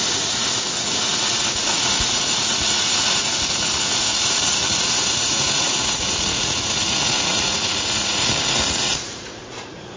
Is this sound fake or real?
fake